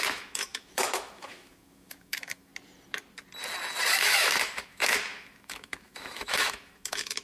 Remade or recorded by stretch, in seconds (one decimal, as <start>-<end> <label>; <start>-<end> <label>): 0.0-2.5 remade; 2.5-3.9 recorded; 3.9-7.2 remade